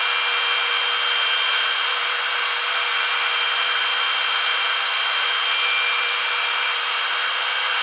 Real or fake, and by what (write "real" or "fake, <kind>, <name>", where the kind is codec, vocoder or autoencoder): real